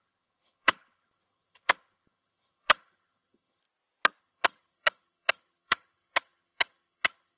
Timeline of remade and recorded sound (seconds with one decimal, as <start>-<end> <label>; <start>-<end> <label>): 0.0-3.6 remade; 3.6-4.2 recorded; 4.2-7.4 remade